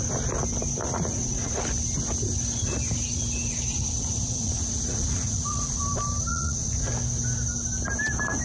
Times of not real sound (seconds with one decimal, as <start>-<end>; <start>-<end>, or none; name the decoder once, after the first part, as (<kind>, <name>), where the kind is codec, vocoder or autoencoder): 0.8-1.6 (vocoder, Vocos); 3.7-5.8; 6.3-6.9